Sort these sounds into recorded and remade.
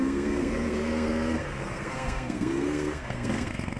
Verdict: remade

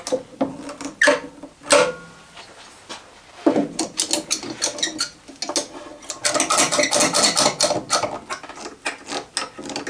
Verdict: recorded